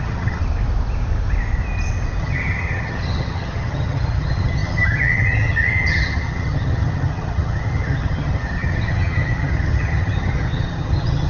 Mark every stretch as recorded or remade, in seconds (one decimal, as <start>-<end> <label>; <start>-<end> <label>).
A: 0.0-0.4 remade; 0.4-2.2 recorded; 2.2-11.3 remade